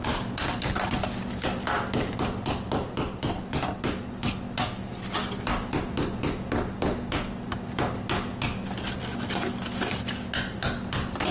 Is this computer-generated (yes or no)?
no